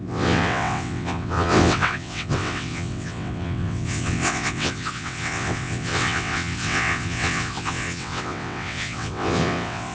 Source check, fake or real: fake